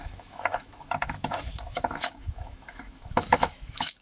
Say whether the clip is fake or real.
fake